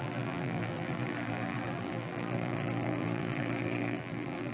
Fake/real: fake